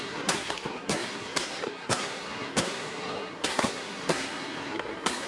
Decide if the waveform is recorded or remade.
remade